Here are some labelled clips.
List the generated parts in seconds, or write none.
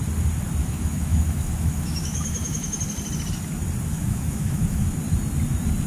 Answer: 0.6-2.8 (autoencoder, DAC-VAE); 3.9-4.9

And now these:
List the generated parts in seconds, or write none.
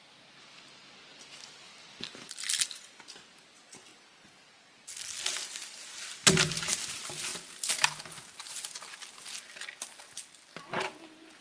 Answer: none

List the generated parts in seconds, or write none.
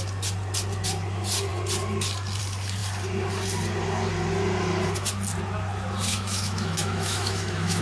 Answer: 6.1-7.8 (autoencoder, DAC-VAE)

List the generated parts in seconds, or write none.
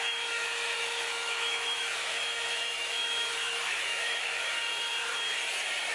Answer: 0.0-4.6 (autoencoder, DAC-VAE)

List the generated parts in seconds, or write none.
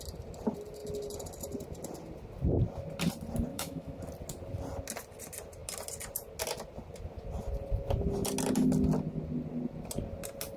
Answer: 3.5-4.0 (autoencoder, DAC-VAE)